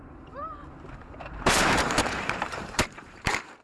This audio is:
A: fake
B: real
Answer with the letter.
A